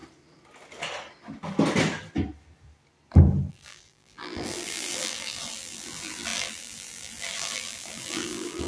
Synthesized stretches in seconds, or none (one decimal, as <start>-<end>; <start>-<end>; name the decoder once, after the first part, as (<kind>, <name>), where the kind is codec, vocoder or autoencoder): 3.5-8.7 (vocoder, BigVGAN v2)